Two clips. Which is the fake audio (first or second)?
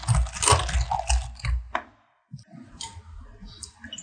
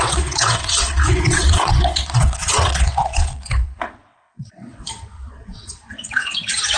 second